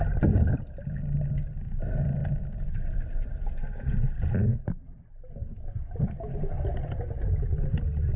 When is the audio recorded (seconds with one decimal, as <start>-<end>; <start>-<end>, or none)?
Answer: 0.0-8.2